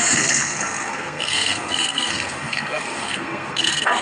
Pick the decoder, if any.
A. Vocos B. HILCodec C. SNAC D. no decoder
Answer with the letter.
C